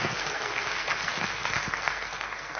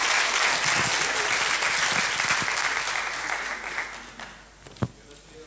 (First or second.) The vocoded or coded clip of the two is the first